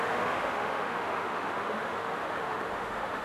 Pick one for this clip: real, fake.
fake